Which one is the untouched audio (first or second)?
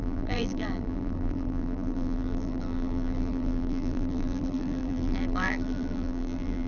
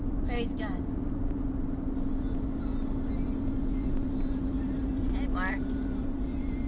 second